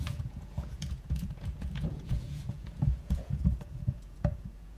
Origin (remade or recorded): remade